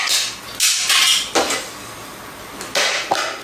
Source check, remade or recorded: recorded